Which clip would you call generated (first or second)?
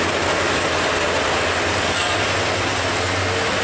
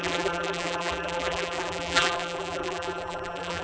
second